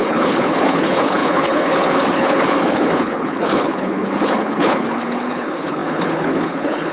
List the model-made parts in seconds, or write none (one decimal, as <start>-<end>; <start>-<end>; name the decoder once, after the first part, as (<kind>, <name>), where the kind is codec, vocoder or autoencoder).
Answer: 0.0-6.9 (codec, HILCodec)